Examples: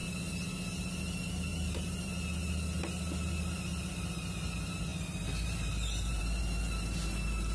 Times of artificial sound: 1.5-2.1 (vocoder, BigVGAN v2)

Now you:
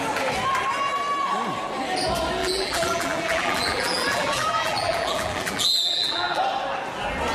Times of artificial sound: 2.4-6.4 (vocoder, BigVGAN v2)

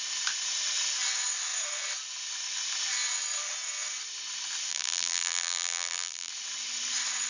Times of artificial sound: 4.7-6.3 (vocoder, BigVGAN v2)